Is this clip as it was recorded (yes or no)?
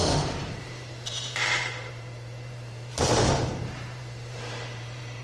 no